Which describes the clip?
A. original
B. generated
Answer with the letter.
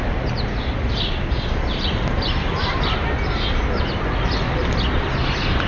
A